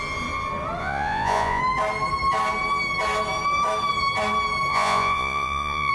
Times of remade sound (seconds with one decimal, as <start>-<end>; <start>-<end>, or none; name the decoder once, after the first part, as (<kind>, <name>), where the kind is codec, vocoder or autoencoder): 0.8-1.6 (vocoder, Vocos); 4.7-5.9